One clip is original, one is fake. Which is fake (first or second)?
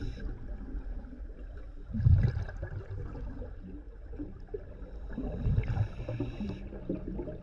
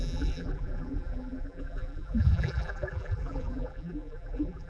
second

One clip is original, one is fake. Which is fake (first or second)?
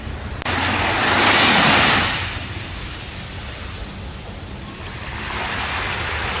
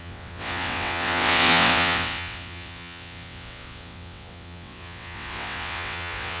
second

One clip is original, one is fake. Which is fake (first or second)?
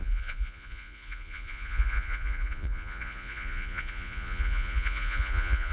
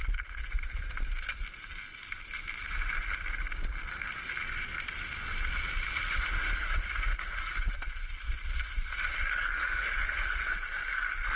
first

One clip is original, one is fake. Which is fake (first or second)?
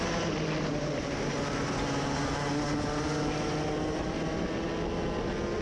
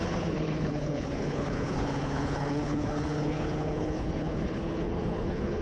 second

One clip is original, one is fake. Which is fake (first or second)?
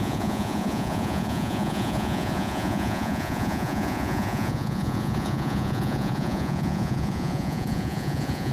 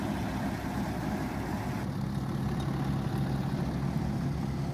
first